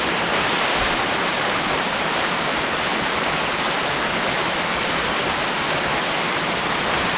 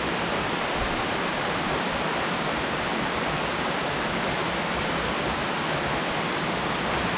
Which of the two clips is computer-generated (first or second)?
first